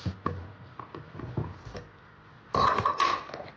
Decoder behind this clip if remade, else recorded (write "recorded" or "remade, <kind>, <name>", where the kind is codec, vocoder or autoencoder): recorded